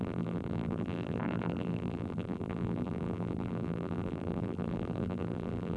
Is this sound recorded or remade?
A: remade